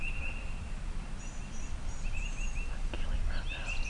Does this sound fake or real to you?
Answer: real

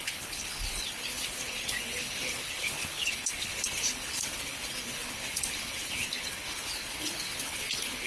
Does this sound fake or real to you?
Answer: fake